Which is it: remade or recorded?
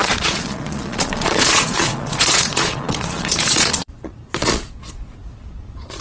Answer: remade